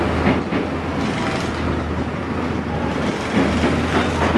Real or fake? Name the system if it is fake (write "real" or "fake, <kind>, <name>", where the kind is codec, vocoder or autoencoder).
real